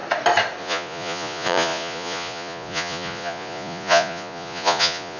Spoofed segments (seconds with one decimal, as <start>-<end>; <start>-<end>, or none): 0.6-5.2